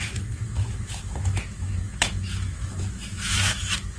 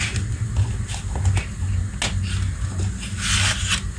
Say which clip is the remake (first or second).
first